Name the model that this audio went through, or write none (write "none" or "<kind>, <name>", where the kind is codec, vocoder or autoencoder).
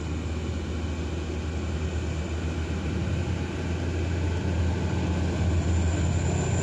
none